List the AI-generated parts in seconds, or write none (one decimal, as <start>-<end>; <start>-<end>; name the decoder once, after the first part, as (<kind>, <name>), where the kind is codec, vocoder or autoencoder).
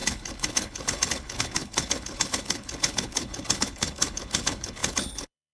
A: 0.0-5.5 (codec, HILCodec)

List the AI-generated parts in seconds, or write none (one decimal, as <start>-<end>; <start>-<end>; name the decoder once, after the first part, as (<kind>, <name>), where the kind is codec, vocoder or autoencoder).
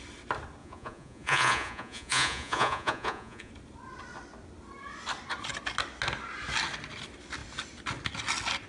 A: 0.6-3.5 (vocoder, Vocos)